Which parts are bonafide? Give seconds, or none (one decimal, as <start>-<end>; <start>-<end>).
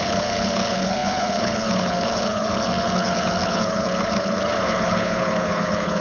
none